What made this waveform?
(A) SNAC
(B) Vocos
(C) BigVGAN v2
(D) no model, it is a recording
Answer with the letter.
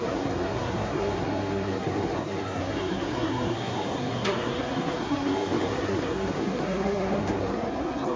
A